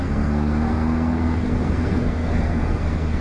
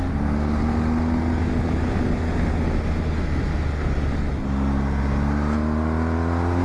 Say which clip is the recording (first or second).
second